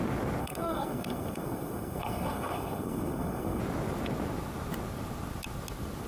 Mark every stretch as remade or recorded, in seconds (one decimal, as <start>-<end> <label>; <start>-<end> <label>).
0.0-0.4 recorded; 0.4-3.6 remade; 3.6-6.1 recorded